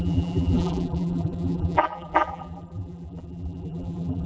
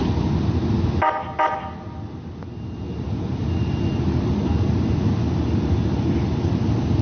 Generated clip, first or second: first